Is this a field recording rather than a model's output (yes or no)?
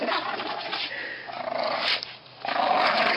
yes